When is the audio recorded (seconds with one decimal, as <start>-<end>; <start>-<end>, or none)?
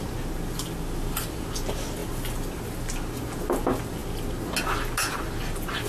0.0-5.9